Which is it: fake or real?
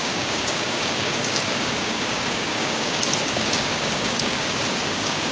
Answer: fake